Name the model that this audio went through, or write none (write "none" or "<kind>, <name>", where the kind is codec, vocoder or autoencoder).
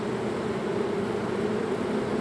none